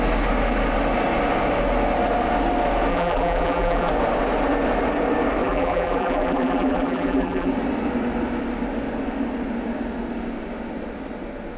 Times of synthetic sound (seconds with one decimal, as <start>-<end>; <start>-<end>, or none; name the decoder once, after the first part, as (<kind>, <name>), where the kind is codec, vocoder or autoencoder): 2.9-3.9 (vocoder, BigVGAN v2); 5.4-7.5